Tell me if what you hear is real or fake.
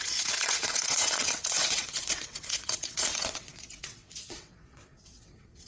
fake